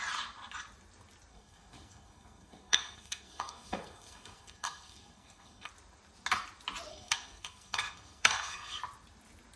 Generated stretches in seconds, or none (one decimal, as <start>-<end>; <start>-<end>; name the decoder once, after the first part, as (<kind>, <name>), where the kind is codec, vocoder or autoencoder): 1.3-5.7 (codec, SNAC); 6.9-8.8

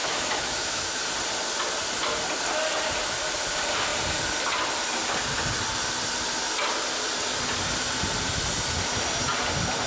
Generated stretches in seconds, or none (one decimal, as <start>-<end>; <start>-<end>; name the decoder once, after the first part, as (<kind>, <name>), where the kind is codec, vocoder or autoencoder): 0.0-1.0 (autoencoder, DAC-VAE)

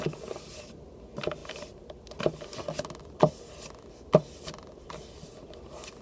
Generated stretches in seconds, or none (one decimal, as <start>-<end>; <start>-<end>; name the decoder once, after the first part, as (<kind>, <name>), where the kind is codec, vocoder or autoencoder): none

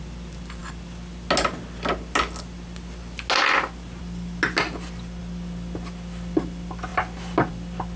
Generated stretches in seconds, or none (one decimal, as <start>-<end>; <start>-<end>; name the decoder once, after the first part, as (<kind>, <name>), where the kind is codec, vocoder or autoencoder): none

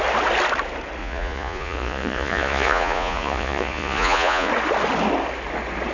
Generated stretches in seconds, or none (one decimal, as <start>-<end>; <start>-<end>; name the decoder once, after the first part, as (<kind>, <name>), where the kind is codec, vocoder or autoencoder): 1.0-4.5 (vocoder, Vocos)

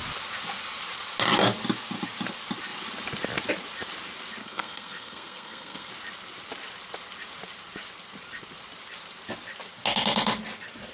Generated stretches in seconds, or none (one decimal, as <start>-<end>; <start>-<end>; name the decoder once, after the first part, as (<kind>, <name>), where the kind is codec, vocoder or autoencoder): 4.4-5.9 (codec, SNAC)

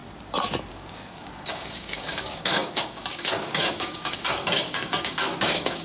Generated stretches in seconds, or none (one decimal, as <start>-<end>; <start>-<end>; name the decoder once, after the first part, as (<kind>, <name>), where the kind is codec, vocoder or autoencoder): 0.7-5.8 (codec, DAC)

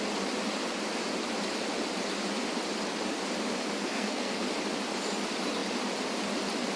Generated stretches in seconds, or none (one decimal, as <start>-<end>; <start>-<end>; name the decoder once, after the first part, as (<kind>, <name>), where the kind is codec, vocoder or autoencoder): 3.8-4.4 (codec, SNAC)